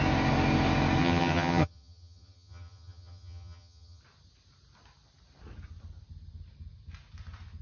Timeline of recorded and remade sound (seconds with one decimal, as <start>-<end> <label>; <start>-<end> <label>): 0.0-1.0 recorded; 1.0-4.0 remade; 4.0-7.6 recorded